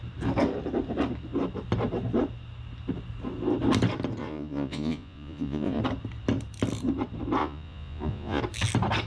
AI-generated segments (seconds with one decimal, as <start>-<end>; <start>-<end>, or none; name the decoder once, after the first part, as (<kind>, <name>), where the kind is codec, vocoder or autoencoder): 4.2-5.8 (vocoder, Vocos); 7.4-8.4